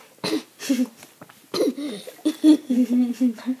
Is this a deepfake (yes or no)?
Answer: no